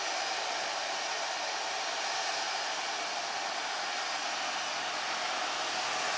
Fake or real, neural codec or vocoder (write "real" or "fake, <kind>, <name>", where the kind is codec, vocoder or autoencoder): real